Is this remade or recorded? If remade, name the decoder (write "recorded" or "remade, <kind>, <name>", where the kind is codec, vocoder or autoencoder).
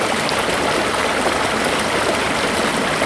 recorded